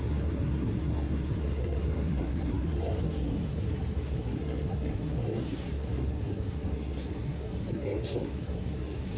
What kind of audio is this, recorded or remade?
remade